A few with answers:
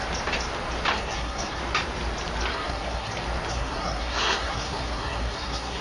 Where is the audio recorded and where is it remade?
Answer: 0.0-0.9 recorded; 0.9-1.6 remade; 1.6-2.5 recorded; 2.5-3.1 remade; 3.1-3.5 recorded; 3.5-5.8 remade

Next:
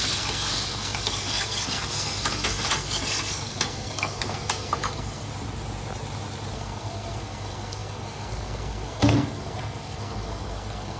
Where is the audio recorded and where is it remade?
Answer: 0.0-5.3 remade; 5.3-6.5 recorded; 6.5-11.0 remade

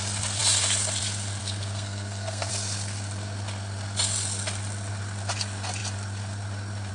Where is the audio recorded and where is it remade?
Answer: 0.0-1.4 recorded; 1.4-2.5 remade; 2.5-6.9 recorded

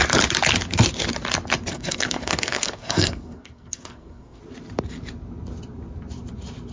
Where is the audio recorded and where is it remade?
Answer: 0.0-1.7 recorded; 1.7-4.4 remade; 4.4-6.7 recorded